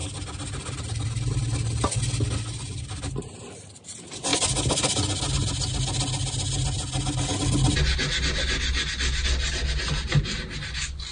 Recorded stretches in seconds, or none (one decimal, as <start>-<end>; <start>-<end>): 0.0-11.1